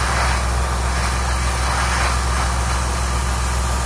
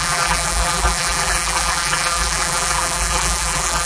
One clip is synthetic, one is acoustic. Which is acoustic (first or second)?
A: first